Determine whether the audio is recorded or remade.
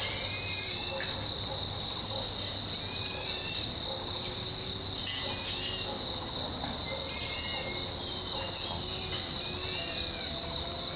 recorded